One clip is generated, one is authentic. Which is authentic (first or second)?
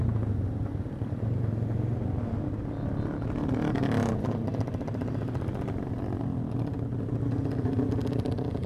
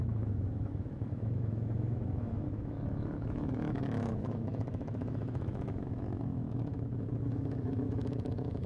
first